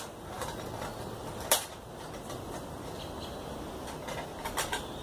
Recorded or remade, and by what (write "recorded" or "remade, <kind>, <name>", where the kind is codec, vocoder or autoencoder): recorded